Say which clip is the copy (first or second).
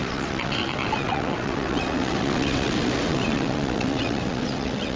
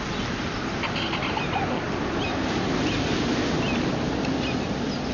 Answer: first